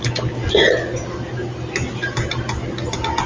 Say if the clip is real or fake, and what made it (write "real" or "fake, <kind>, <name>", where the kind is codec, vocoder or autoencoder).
real